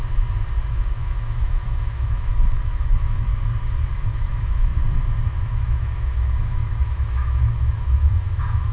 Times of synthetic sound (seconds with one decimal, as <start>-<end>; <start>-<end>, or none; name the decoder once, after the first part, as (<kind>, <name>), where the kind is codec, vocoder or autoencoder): 0.7-3.3 (autoencoder, DAC-VAE); 3.9-4.7; 5.4-8.7